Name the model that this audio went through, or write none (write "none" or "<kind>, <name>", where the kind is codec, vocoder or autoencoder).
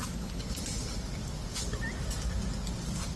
none